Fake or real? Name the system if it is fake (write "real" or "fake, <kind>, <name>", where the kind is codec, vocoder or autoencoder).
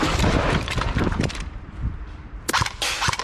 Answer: fake, vocoder, BigVGAN v2